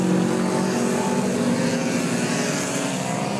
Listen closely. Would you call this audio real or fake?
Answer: real